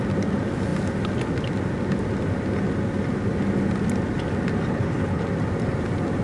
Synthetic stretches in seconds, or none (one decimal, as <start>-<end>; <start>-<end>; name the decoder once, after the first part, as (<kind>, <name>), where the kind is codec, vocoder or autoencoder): 4.7-5.2 (codec, HILCodec)